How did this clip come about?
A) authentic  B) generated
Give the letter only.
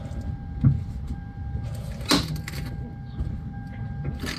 A